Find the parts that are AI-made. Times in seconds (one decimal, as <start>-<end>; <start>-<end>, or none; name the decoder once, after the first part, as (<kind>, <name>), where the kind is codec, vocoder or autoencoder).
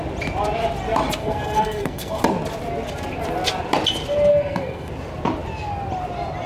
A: 1.2-2.2 (codec, SNAC); 4.3-4.9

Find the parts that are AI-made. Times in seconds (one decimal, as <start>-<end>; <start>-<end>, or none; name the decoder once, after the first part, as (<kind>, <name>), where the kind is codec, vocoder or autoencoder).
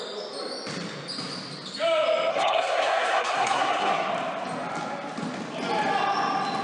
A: 2.3-4.1 (codec, SNAC)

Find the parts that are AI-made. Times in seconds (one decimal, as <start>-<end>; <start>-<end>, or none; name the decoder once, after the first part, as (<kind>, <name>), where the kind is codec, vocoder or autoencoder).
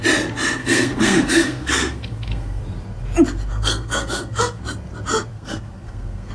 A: 0.6-2.6 (codec, SNAC); 3.5-4.6; 5.3-6.3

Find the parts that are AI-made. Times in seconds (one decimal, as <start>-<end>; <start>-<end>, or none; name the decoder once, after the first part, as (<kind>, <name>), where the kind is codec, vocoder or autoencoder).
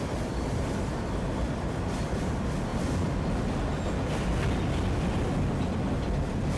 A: none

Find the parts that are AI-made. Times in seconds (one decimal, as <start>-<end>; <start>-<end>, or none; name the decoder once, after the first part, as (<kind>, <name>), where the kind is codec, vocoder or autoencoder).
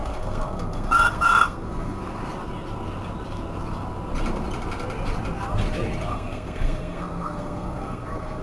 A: 0.0-2.0 (codec, SNAC); 6.1-8.4